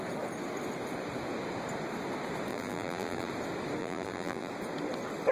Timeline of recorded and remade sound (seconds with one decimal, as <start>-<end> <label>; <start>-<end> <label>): 0.0-2.5 recorded; 2.5-3.3 remade; 3.3-3.8 recorded; 3.8-4.5 remade; 4.5-5.3 recorded